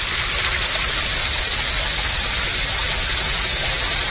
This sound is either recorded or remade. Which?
recorded